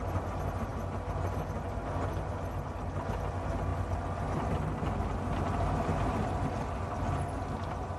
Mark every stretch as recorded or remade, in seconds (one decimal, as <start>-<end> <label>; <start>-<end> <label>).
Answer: 0.0-8.0 recorded